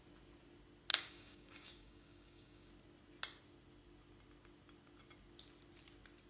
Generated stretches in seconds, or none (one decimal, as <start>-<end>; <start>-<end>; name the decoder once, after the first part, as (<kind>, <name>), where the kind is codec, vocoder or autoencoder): 0.9-2.7 (codec, DAC)